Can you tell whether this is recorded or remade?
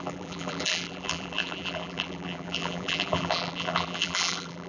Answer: remade